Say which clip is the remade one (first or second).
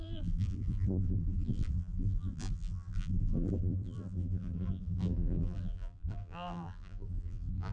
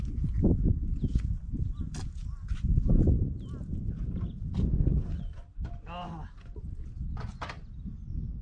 first